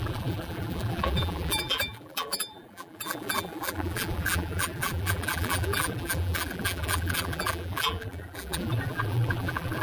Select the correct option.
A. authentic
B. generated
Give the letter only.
B